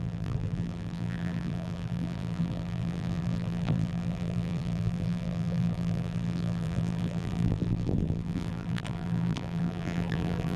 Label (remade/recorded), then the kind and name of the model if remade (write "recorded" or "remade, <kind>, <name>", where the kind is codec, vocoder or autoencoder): remade, vocoder, BigVGAN v2